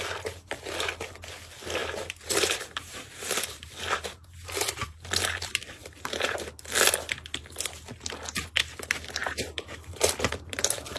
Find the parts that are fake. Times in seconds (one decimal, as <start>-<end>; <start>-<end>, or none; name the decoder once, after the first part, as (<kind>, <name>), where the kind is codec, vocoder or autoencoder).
1.8-4.7 (vocoder, BigVGAN v2); 5.8-6.4; 9.2-11.0